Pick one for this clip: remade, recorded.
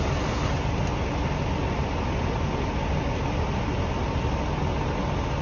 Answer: recorded